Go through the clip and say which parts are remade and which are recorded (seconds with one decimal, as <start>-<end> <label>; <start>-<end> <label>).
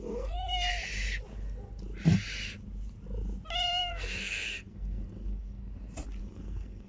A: 0.0-0.7 remade; 0.7-3.7 recorded; 3.7-5.6 remade; 5.6-6.2 recorded; 6.2-6.9 remade